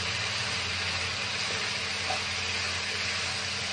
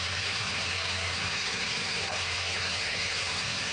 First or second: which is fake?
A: second